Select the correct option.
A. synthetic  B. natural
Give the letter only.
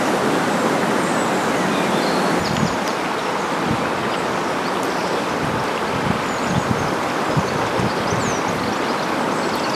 B